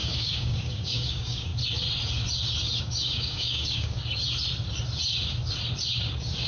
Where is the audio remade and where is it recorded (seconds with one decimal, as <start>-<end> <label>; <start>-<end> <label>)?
0.0-1.5 remade; 1.5-2.8 recorded; 2.8-4.0 remade; 4.0-6.5 recorded